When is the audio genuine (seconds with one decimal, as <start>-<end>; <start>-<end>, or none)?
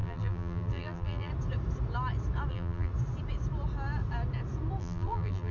1.3-2.5; 2.9-4.8